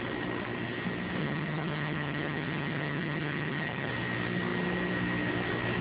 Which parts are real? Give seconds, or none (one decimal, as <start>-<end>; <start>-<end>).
0.0-1.2; 3.9-5.8